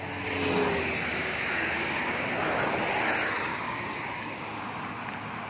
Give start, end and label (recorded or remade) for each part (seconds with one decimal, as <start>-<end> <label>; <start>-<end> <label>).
0.0-1.1 recorded; 1.1-2.3 remade; 2.3-3.5 recorded; 3.5-4.6 remade; 4.6-5.5 recorded